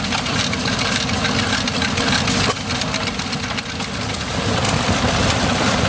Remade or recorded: recorded